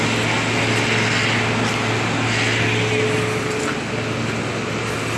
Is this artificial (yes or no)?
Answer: no